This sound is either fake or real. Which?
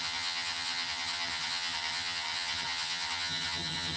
fake